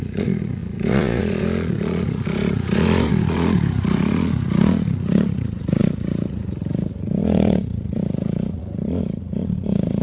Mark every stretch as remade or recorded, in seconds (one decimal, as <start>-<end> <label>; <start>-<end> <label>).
0.0-10.0 remade